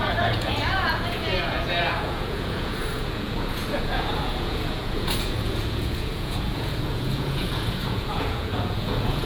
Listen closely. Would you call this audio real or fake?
fake